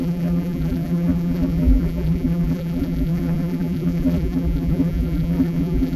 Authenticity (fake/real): fake